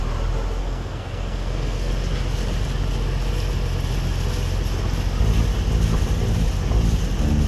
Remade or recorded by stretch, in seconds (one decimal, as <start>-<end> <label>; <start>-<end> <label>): 0.0-0.6 recorded; 0.6-1.9 remade; 1.9-7.5 recorded